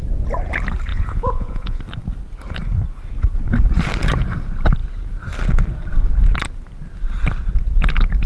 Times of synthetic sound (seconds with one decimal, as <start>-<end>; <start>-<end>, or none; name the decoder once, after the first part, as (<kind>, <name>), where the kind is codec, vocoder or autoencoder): 0.9-1.8 (vocoder, Vocos)